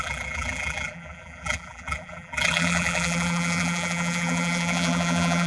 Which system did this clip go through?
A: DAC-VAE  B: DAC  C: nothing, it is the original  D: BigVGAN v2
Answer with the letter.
D